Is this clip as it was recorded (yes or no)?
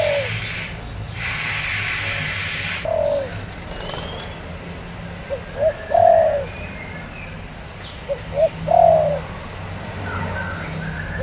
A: yes